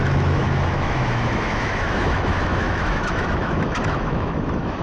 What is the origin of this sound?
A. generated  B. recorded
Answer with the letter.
A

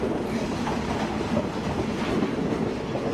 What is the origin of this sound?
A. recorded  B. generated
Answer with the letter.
A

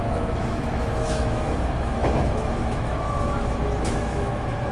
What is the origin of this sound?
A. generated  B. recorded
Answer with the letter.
A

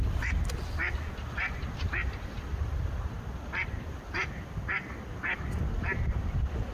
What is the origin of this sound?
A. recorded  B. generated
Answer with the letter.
A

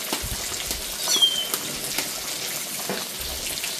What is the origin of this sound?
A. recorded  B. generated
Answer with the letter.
A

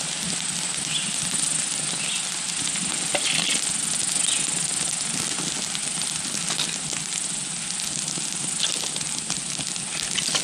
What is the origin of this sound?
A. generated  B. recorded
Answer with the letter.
B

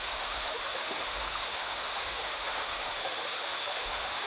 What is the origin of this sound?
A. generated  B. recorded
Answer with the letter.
A